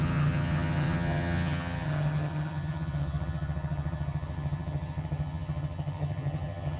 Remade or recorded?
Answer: remade